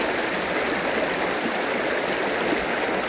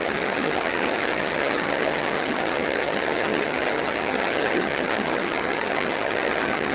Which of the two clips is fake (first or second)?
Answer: second